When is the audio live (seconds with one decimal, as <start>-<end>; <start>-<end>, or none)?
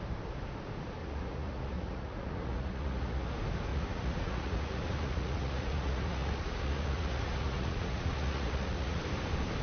0.0-1.0; 3.3-3.7; 9.0-9.6